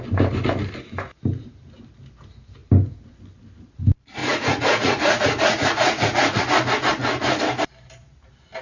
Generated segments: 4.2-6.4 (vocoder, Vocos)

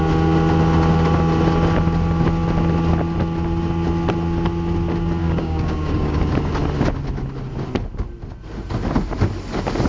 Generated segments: 5.2-6.2 (codec, DAC)

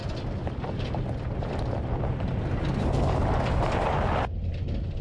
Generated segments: none